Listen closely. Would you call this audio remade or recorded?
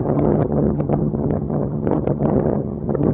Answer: remade